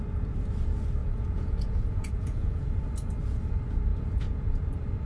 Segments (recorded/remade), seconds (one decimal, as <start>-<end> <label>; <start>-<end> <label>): 0.0-1.0 recorded; 1.0-2.6 remade; 2.6-3.9 recorded; 3.9-4.5 remade; 4.5-5.1 recorded